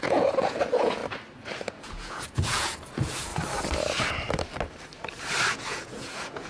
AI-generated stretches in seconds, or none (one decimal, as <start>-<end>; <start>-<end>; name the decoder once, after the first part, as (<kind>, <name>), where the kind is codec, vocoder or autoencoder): 0.0-1.0 (vocoder, Vocos); 1.7-3.3; 5.5-6.5